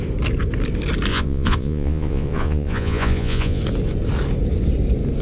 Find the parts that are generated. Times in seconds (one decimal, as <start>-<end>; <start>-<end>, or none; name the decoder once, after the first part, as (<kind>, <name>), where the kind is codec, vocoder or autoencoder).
1.1-3.6 (vocoder, Vocos)

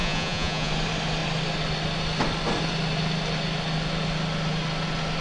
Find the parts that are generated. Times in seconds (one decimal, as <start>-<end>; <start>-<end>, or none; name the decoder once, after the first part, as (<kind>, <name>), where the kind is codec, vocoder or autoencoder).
0.0-0.7 (vocoder, Vocos)

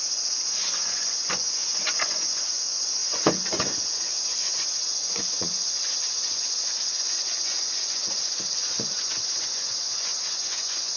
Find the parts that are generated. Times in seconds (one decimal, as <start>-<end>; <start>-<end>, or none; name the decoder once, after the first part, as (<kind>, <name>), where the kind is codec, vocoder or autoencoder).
0.0-11.0 (vocoder, Vocos)

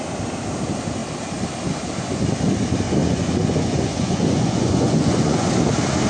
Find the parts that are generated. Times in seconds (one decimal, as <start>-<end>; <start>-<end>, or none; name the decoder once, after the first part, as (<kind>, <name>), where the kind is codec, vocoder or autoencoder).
3.0-5.5 (vocoder, Vocos)

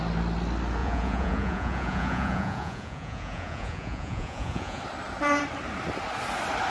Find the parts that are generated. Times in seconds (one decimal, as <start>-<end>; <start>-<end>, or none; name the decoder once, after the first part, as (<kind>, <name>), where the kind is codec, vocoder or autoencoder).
0.8-4.8 (vocoder, Vocos)

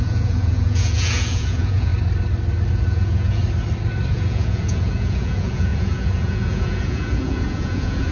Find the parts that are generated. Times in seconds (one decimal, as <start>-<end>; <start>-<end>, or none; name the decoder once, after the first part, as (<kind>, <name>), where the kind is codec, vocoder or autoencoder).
0.0-1.9 (vocoder, Vocos); 2.7-3.4; 4.1-8.1

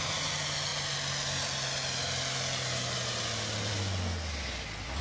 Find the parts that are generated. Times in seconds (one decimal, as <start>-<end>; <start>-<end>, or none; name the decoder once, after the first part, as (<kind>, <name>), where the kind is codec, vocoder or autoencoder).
none